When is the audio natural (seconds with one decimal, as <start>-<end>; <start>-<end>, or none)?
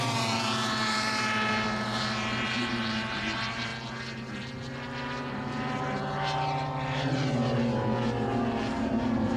3.7-8.8